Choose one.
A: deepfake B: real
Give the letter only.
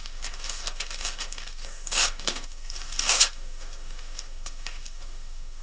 A